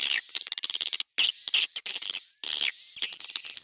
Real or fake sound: real